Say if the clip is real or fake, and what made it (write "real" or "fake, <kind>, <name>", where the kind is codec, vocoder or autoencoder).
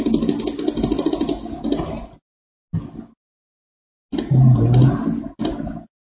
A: real